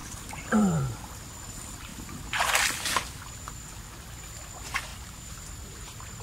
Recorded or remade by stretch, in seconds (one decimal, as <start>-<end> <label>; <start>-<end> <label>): 0.0-0.8 remade; 0.8-4.9 recorded; 4.9-6.2 remade